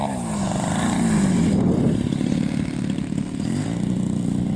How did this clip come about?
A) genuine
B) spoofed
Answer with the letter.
A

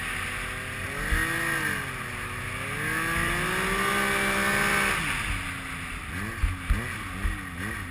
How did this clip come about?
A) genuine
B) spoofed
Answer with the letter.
A